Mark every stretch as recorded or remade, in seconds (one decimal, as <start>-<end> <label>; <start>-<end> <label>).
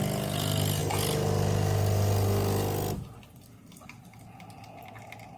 0.0-5.4 recorded